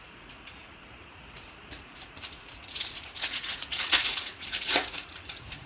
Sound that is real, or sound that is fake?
fake